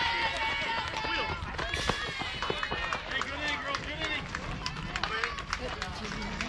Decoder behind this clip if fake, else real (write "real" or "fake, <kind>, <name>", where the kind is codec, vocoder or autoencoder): real